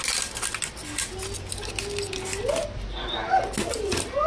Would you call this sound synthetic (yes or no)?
no